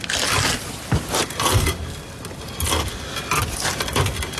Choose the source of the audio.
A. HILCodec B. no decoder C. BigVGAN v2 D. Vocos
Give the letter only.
B